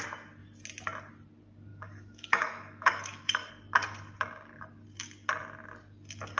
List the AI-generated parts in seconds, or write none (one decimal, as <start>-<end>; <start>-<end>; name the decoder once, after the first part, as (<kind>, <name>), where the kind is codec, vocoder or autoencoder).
1.7-3.5 (autoencoder, DAC-VAE)